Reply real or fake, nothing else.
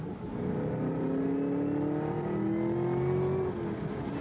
real